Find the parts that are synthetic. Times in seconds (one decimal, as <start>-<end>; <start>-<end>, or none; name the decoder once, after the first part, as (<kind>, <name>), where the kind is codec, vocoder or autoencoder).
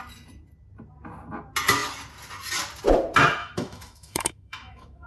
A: 3.4-5.1 (autoencoder, DAC-VAE)